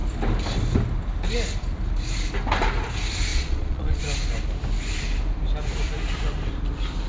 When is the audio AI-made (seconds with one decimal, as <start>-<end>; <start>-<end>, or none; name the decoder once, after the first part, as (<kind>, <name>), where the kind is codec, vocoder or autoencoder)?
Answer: 3.3-4.0 (vocoder, Vocos)